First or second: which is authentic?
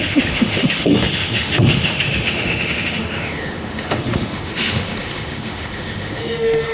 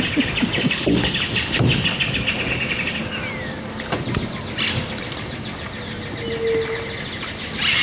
second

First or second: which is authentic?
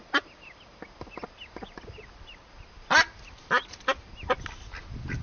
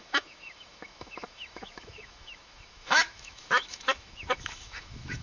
first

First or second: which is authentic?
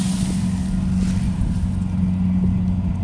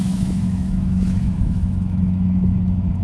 first